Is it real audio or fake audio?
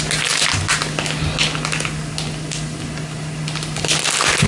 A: real